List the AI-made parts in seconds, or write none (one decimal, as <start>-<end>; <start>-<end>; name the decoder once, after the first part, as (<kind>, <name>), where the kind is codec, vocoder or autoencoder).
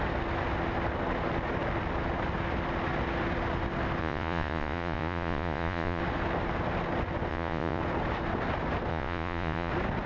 4.0-6.0 (vocoder, Vocos); 7.3-7.8; 8.9-9.7